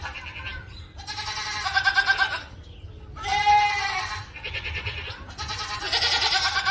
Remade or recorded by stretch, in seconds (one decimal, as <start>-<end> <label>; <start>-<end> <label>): 0.0-6.7 recorded